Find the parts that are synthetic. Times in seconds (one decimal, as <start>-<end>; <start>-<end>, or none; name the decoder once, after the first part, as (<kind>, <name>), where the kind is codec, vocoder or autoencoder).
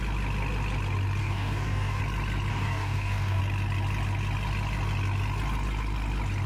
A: 1.2-2.0 (codec, DAC); 2.5-3.4